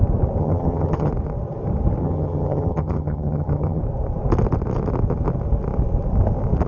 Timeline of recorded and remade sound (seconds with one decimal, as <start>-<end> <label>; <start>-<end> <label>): 0.0-0.4 recorded; 0.4-1.1 remade; 1.1-2.0 recorded; 2.0-3.8 remade; 3.8-6.7 recorded